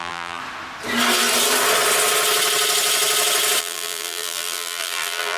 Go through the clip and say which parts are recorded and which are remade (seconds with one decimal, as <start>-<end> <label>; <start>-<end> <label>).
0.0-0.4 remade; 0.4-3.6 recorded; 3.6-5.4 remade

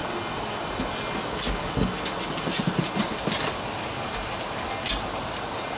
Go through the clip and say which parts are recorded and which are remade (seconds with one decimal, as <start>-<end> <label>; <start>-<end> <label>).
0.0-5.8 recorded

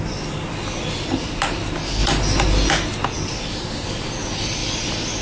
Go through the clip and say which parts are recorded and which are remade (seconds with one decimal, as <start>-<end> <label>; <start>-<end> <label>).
0.0-5.2 recorded